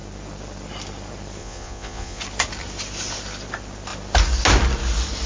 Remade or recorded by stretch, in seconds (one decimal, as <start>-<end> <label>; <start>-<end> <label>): 0.0-1.4 recorded; 1.4-2.2 remade; 2.2-5.3 recorded